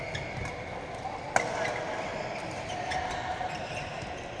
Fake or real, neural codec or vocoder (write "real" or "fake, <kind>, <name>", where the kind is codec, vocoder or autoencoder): real